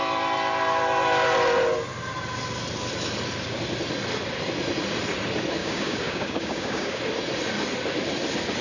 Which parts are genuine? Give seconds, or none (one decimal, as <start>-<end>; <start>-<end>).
0.0-5.6; 7.0-8.6